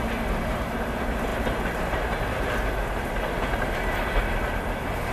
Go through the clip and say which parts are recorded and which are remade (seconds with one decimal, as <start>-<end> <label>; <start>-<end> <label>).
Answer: 0.0-5.1 recorded